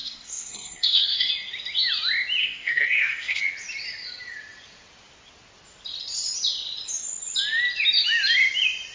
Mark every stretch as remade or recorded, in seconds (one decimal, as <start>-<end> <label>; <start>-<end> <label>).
0.0-1.3 remade; 1.3-2.4 recorded; 2.4-3.4 remade; 3.4-8.9 recorded